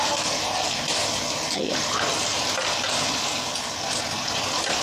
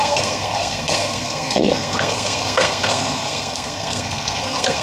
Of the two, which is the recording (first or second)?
first